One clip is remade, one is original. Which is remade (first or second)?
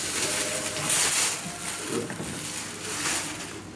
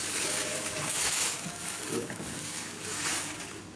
second